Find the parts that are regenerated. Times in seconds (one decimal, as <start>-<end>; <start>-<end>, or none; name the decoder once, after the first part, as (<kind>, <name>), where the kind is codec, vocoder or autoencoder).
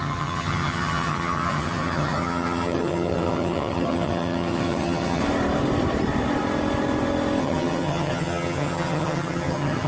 0.0-5.2 (vocoder, HiFi-GAN); 7.4-9.9